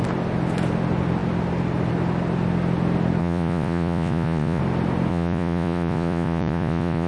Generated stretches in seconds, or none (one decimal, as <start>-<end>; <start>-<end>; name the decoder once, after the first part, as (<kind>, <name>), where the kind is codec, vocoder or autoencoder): 3.2-4.6 (vocoder, Vocos); 5.1-7.1